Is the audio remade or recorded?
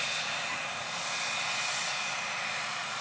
recorded